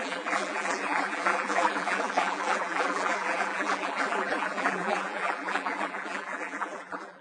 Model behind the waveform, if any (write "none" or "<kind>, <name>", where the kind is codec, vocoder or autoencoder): vocoder, BigVGAN v2